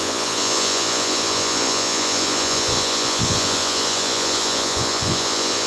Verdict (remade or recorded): remade